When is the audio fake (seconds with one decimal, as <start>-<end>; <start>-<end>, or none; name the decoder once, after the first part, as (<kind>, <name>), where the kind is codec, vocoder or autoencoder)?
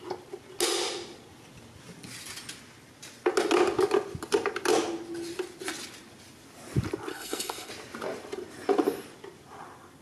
7.1-7.7 (codec, SNAC)